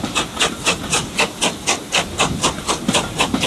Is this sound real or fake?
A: real